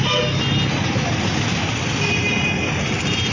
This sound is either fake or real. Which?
real